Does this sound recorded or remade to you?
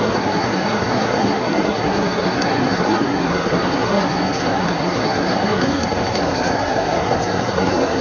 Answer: remade